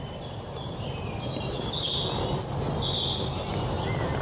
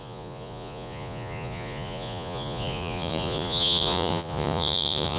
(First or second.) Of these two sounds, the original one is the first